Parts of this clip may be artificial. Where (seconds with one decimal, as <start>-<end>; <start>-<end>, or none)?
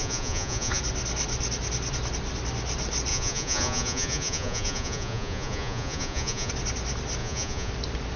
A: 0.0-0.8; 3.1-6.5; 7.2-7.7